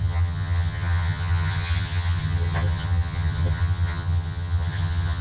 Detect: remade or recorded remade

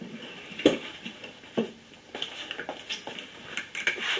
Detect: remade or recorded recorded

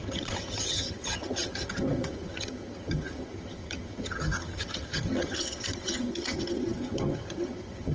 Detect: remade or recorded remade